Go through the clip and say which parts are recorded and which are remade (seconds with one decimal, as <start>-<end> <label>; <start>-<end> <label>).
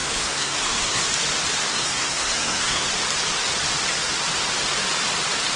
0.0-1.0 remade; 1.0-1.7 recorded; 1.7-2.9 remade; 2.9-5.6 recorded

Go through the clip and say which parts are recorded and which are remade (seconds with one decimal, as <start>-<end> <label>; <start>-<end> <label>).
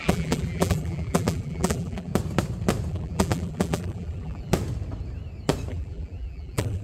0.0-2.1 remade; 2.1-2.9 recorded; 2.9-4.5 remade; 4.5-5.7 recorded; 5.7-6.8 remade